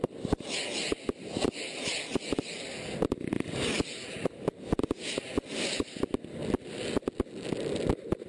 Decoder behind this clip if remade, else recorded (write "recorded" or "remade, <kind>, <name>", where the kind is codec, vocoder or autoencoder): recorded